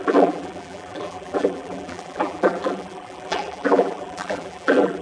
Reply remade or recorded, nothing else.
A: remade